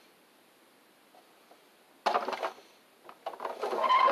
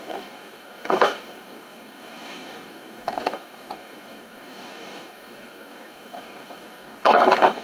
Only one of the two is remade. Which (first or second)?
second